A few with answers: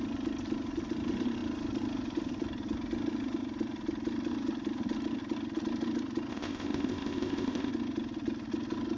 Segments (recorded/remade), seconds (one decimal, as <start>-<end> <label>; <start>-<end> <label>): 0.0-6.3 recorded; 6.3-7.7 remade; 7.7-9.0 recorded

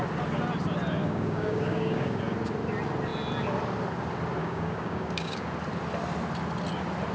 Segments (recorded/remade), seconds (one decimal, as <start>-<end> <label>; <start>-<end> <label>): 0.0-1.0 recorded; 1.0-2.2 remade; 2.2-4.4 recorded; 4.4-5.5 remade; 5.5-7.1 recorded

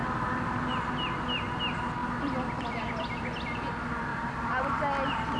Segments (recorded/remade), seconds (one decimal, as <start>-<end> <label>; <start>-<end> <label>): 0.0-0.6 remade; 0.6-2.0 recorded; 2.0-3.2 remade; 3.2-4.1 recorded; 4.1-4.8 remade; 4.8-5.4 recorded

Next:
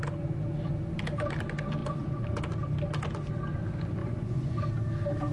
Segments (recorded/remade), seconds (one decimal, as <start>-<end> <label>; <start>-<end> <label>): 0.0-1.8 recorded; 1.8-2.4 remade; 2.4-4.0 recorded; 4.0-4.6 remade; 4.6-5.3 recorded